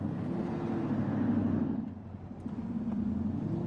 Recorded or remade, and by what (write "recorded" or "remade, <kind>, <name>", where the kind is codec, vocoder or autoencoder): recorded